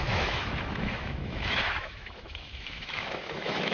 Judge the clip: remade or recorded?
remade